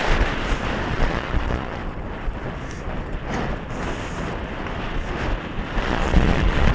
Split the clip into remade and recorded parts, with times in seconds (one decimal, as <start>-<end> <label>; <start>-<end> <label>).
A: 0.0-0.9 recorded; 0.9-1.8 remade; 1.8-5.8 recorded; 5.8-6.7 remade